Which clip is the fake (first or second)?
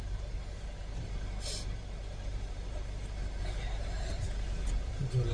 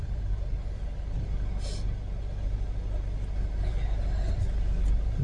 first